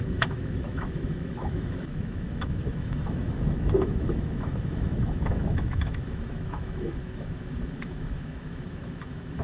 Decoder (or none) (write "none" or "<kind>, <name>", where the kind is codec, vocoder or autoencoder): autoencoder, DAC-VAE